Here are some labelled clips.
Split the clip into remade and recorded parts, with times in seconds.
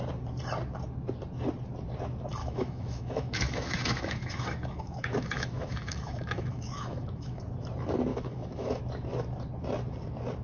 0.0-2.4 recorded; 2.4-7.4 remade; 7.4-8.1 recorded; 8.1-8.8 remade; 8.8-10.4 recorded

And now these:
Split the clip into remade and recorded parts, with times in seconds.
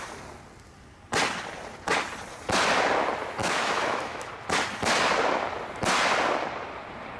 0.0-3.4 recorded; 3.4-4.3 remade; 4.3-7.2 recorded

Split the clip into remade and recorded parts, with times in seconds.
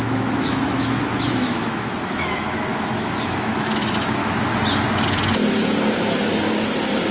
0.0-4.2 remade; 4.2-7.1 recorded